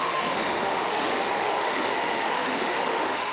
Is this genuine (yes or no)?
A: no